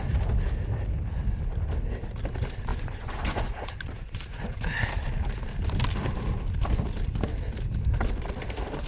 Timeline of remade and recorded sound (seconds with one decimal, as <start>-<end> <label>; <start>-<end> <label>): 0.0-2.7 recorded; 2.7-4.6 remade; 4.6-8.9 recorded